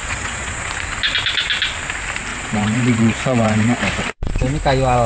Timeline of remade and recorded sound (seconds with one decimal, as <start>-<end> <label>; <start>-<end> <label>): 0.0-0.7 remade; 0.7-2.3 recorded; 2.3-4.3 remade; 4.3-5.1 recorded